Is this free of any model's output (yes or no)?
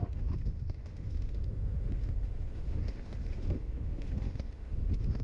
no